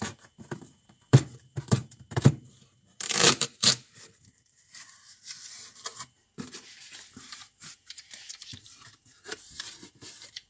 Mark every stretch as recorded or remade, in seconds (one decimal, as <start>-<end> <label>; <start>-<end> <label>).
0.0-10.5 remade